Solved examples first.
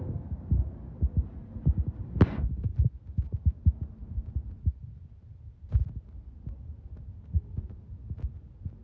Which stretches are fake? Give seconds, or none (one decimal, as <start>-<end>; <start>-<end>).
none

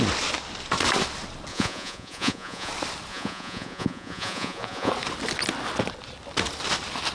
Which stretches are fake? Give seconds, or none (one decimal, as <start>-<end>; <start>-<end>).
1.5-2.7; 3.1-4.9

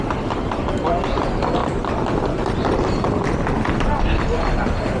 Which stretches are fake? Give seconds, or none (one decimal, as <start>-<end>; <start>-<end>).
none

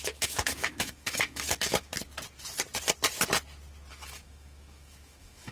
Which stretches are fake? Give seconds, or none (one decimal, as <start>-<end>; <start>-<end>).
0.0-1.9; 3.9-5.5

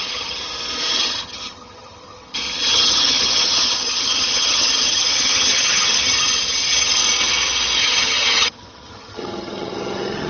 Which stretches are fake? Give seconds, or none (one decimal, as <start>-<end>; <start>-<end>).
0.0-0.4; 1.0-7.0; 7.8-10.3

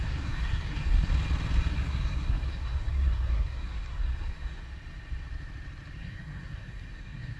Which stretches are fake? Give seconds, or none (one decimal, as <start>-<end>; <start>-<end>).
0.0-1.1; 1.7-4.6; 6.0-7.4